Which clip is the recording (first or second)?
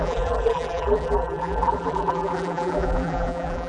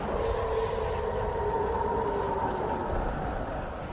second